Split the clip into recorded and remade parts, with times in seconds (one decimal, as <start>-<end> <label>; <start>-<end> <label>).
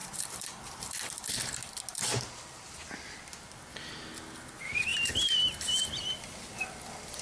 0.0-0.6 remade; 0.6-7.2 recorded